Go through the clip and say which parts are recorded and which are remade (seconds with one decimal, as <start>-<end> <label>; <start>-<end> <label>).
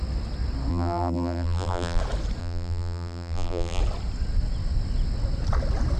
0.0-0.7 recorded; 0.7-2.0 remade; 2.0-2.4 recorded; 2.4-3.8 remade; 3.8-6.0 recorded